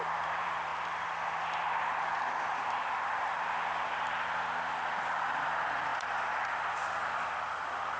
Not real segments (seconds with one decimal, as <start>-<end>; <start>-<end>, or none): 0.0-0.7; 2.9-8.0